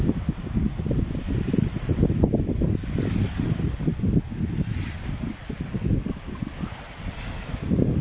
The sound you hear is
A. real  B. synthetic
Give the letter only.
A